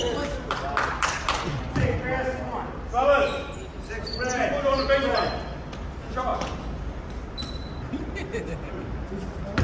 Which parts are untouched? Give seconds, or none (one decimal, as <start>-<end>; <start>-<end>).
0.0-9.6

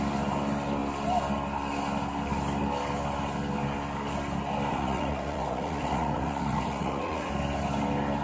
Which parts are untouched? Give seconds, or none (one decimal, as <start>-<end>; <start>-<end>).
0.0-4.7; 7.3-8.2

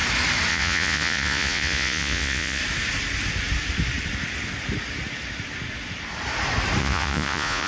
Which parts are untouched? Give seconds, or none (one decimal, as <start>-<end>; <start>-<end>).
0.0-0.5; 2.6-6.8

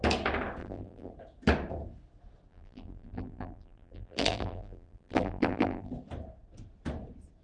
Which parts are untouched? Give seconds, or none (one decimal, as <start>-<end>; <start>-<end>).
0.0-0.6; 1.1-2.5; 5.9-7.4

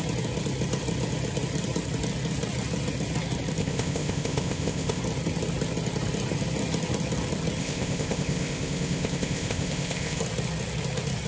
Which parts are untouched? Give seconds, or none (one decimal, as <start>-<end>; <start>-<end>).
0.0-3.6; 5.0-7.6; 10.2-11.3

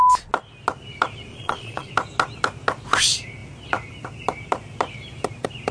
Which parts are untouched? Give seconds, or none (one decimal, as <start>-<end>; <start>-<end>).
0.0-1.3; 1.9-5.7

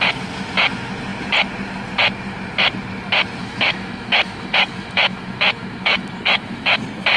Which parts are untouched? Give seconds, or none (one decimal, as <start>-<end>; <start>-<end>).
0.0-3.4; 6.8-7.2

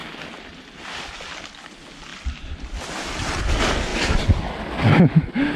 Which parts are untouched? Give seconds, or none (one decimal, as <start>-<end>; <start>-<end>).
0.0-2.1; 3.4-3.9; 4.4-5.6